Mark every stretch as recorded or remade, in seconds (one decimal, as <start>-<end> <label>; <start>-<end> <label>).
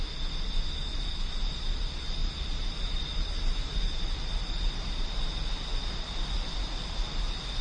0.0-2.2 recorded; 2.2-5.2 remade; 5.2-7.6 recorded